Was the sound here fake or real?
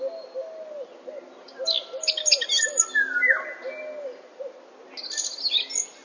real